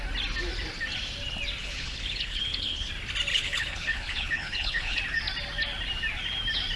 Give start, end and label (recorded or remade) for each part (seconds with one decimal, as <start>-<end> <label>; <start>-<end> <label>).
0.0-1.6 recorded; 1.6-2.9 remade; 2.9-3.3 recorded; 3.3-5.0 remade; 5.0-6.8 recorded